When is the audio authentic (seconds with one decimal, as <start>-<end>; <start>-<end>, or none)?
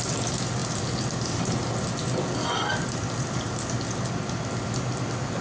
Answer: 0.0-5.4